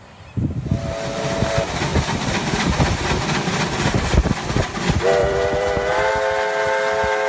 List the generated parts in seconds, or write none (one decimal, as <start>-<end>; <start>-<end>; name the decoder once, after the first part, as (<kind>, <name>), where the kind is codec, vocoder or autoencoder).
1.9-3.1 (vocoder, BigVGAN v2); 5.2-6.1